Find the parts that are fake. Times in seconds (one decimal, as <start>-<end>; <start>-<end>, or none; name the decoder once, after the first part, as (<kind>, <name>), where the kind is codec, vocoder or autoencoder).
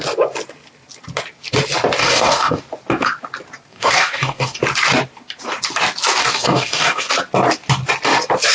2.0-2.6 (codec, DAC); 3.7-4.6; 6.2-7.1